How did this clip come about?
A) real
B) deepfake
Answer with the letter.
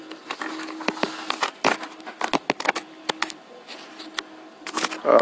A